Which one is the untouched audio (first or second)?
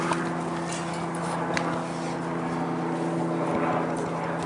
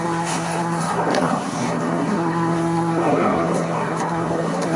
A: first